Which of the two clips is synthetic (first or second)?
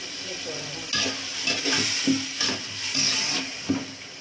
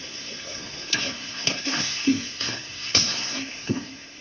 second